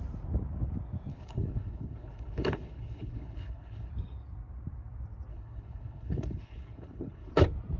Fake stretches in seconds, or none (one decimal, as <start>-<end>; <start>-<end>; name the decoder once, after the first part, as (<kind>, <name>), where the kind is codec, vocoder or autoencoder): 1.1-3.9 (codec, HILCodec); 5.3-7.3